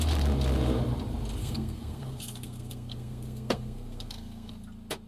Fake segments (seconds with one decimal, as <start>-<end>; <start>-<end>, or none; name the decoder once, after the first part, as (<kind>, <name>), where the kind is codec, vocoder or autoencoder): 1.4-4.5 (codec, SNAC)